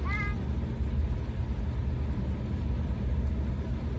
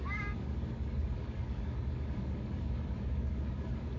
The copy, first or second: second